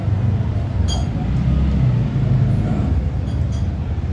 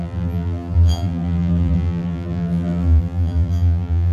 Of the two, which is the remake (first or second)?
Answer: second